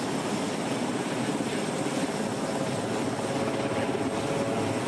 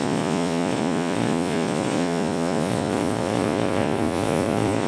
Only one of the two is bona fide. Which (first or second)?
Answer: first